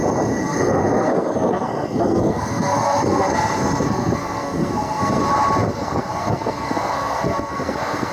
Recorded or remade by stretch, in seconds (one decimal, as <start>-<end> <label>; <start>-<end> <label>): 0.0-0.4 recorded; 0.4-5.2 remade; 5.2-5.7 recorded; 5.7-8.1 remade